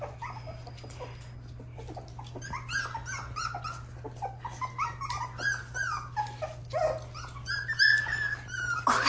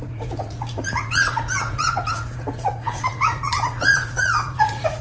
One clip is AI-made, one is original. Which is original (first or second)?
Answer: first